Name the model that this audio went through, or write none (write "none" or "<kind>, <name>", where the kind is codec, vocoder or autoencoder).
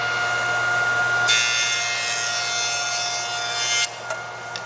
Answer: none